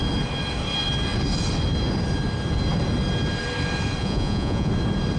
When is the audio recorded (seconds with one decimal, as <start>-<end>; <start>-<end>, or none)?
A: 0.0-4.0; 4.7-5.2